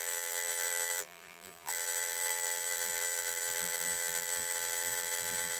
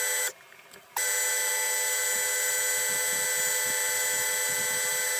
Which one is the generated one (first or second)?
first